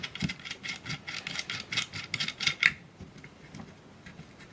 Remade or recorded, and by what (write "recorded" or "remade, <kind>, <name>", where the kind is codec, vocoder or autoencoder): recorded